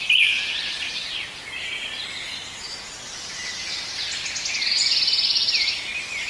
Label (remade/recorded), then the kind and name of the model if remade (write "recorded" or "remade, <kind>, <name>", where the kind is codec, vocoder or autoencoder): recorded